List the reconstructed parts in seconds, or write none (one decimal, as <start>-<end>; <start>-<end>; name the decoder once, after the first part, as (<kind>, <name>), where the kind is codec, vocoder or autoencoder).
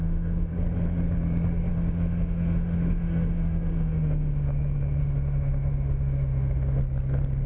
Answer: 0.0-0.5 (autoencoder, DAC-VAE); 1.7-4.5; 5.0-6.8